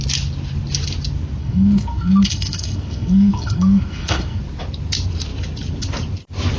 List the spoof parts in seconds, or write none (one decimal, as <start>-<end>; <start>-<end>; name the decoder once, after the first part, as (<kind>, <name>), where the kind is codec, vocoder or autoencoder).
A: 1.4-4.4 (codec, SNAC)